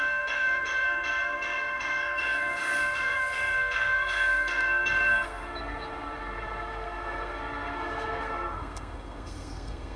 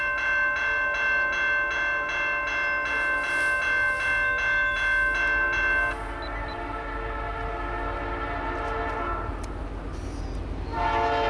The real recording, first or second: second